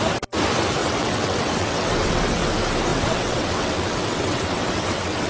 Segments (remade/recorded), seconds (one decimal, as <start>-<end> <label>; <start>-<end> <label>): 0.0-0.8 recorded; 0.8-2.5 remade; 2.5-2.9 recorded; 2.9-5.3 remade